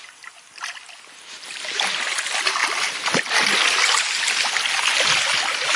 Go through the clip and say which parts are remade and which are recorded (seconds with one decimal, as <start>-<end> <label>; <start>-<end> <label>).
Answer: 0.0-5.8 recorded